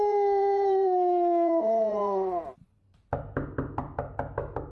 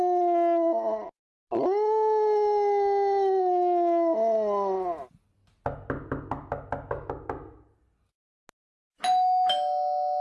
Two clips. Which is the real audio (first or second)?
second